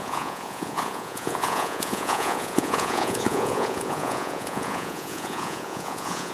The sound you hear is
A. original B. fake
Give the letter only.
B